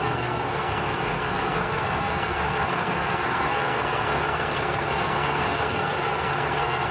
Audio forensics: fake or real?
fake